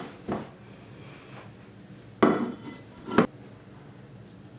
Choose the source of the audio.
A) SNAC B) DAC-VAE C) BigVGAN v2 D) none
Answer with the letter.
D